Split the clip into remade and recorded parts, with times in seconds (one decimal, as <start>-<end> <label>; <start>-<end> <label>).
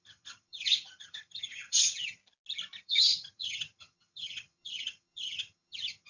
0.0-2.2 remade; 2.2-2.8 recorded; 2.8-6.1 remade